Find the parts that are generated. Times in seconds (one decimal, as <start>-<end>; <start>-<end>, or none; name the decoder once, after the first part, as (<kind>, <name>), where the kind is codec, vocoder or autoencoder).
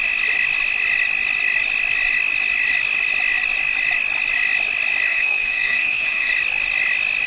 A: 5.1-6.3 (codec, SNAC)